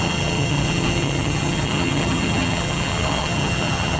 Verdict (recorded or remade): remade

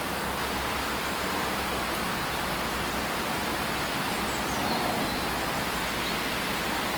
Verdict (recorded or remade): recorded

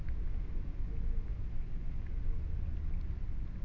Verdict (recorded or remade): recorded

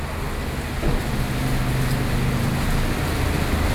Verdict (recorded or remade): recorded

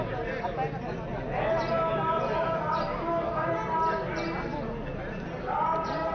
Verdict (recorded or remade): recorded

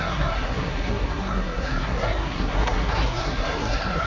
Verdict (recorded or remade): remade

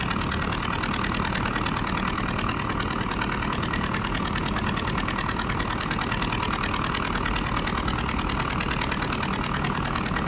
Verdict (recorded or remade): recorded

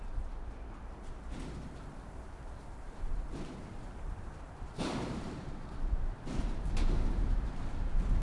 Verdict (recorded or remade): remade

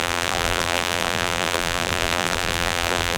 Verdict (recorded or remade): remade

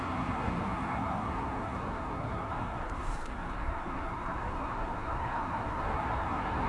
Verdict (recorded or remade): remade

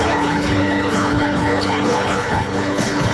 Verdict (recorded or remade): remade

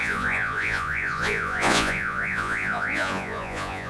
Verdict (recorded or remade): remade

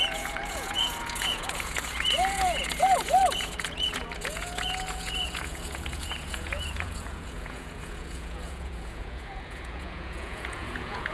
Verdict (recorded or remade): remade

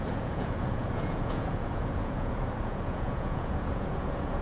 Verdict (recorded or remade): remade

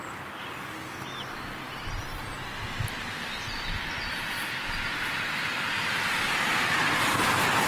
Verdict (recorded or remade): recorded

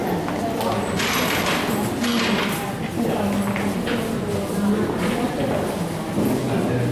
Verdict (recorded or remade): recorded